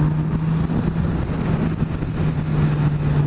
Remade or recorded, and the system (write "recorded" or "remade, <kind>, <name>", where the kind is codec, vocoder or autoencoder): recorded